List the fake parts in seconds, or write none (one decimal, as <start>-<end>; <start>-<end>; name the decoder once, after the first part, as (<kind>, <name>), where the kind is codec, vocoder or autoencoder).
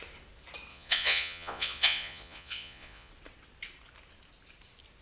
0.7-3.1 (vocoder, Vocos)